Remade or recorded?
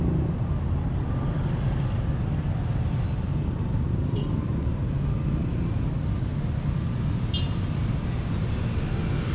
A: recorded